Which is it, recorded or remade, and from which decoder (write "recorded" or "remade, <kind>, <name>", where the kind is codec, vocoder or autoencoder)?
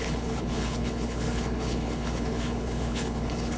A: remade, codec, HILCodec